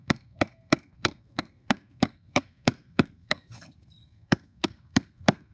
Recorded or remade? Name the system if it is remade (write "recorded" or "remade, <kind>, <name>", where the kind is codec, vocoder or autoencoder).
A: remade, codec, SNAC